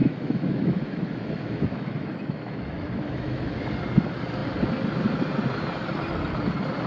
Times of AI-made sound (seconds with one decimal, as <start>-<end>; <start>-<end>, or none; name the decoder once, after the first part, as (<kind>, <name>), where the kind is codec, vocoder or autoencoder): 0.0-3.7 (autoencoder, DAC-VAE)